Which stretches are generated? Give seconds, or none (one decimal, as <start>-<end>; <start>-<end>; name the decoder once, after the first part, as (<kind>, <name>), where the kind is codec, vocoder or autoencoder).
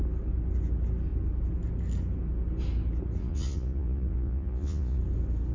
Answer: 3.2-5.0 (vocoder, Vocos)